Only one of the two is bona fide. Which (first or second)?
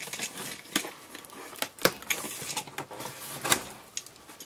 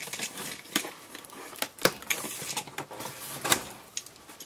first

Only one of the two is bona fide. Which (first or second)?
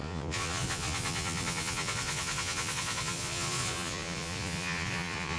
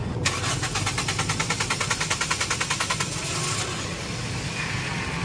second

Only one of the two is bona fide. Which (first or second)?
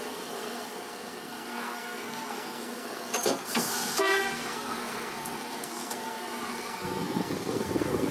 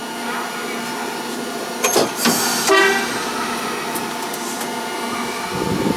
second